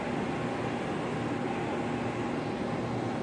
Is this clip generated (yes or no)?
no